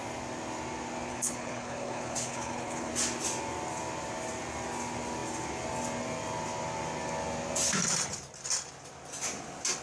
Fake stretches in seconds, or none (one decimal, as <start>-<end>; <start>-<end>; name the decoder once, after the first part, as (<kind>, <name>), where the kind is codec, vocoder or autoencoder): 1.1-2.9 (codec, HILCodec)